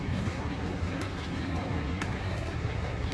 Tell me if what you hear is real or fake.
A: fake